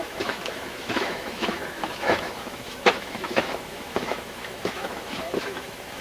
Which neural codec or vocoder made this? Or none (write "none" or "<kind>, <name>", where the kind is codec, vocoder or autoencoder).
autoencoder, DAC-VAE